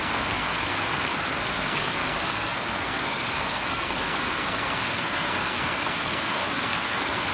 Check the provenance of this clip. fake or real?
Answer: fake